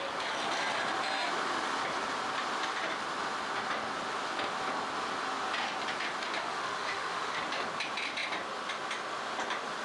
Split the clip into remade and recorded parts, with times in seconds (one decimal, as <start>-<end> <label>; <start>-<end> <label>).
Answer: 0.0-6.4 recorded; 6.4-7.4 remade; 7.4-9.8 recorded